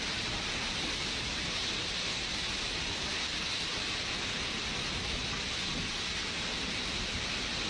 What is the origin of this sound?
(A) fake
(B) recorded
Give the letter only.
B